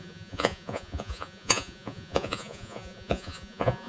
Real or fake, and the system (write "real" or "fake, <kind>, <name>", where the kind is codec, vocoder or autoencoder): fake, vocoder, Vocos